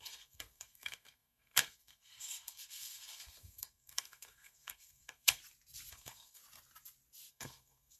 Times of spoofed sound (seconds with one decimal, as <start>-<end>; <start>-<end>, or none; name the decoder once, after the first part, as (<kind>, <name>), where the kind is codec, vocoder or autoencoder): 0.0-5.4 (codec, SNAC); 5.9-6.4; 7.3-8.0